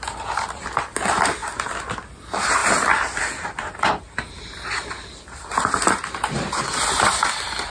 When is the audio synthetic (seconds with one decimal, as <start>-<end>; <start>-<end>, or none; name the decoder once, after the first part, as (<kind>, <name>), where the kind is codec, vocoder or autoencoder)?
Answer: none